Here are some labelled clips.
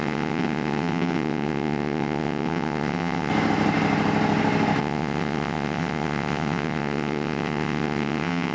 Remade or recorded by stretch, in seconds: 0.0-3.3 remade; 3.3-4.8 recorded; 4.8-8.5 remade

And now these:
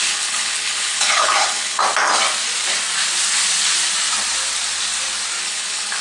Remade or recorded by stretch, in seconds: 0.0-1.8 remade; 1.8-5.4 recorded; 5.4-6.0 remade

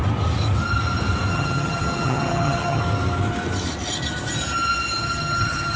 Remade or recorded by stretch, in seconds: 0.0-1.3 recorded; 1.3-2.8 remade; 2.8-5.0 recorded; 5.0-5.8 remade

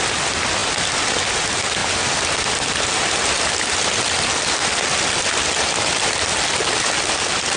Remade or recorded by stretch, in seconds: 0.0-7.6 recorded

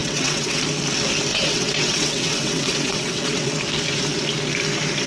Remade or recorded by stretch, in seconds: 0.0-0.6 remade; 0.6-1.3 recorded; 1.3-3.5 remade; 3.5-5.1 recorded

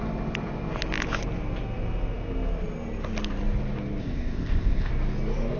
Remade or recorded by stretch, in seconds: 0.0-4.0 recorded; 4.0-4.9 remade; 4.9-5.6 recorded

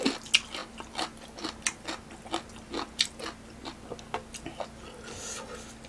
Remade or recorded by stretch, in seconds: 0.0-5.9 recorded

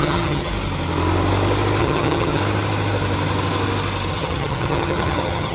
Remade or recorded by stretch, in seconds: 0.0-0.5 remade; 0.5-1.8 recorded; 1.8-2.4 remade; 2.4-4.1 recorded; 4.1-5.5 remade